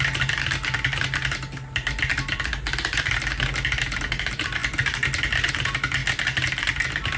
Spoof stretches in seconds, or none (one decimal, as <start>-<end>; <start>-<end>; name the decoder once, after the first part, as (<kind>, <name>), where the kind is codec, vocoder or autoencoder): none